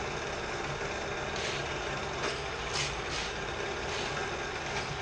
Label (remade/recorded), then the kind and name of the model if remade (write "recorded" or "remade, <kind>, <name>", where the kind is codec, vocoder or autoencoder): recorded